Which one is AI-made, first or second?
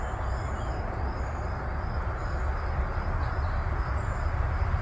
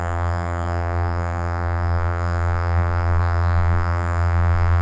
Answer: second